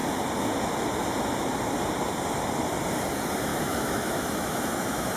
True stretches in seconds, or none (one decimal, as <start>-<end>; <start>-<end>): 0.0-3.5